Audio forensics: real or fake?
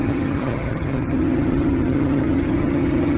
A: fake